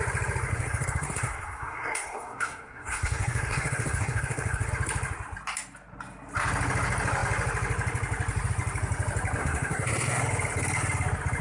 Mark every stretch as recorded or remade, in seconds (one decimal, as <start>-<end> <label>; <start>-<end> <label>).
0.0-0.5 recorded; 0.5-4.7 remade; 4.7-9.4 recorded; 9.4-10.2 remade; 10.2-11.4 recorded